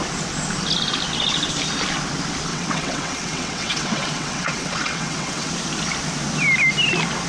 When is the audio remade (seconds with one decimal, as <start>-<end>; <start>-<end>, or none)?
2.5-5.5